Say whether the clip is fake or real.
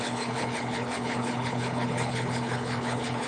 fake